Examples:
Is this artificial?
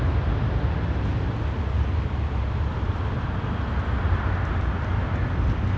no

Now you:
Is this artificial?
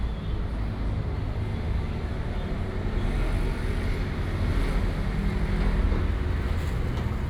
no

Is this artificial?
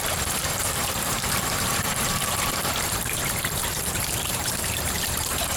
yes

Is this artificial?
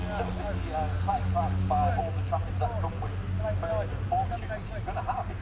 no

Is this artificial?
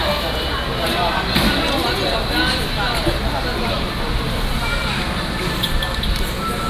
no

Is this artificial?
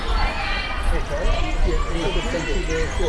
no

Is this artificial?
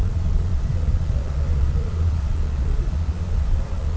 yes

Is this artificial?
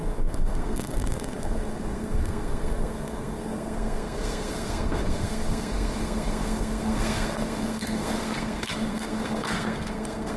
yes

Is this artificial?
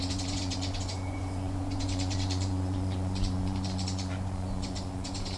yes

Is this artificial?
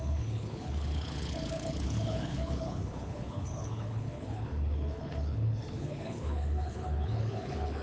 yes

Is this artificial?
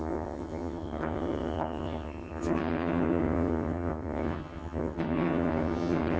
yes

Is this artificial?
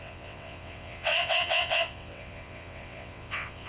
yes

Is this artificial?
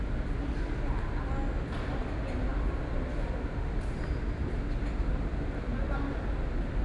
no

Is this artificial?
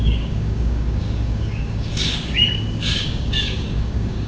yes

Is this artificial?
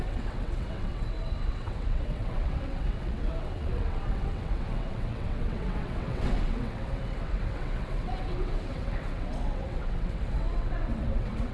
yes